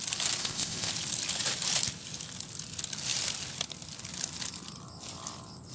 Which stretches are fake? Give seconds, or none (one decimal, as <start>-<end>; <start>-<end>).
0.4-0.9